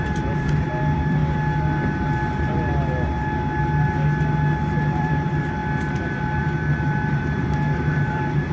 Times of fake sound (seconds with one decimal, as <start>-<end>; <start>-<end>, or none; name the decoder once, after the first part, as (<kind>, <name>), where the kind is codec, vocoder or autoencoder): 0.0-1.2 (vocoder, BigVGAN v2); 5.0-5.6; 6.4-8.5